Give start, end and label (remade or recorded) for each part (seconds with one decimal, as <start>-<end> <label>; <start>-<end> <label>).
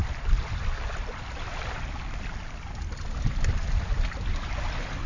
0.0-5.1 recorded